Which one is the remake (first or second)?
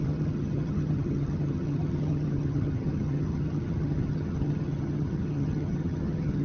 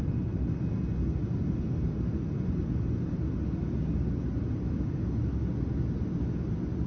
first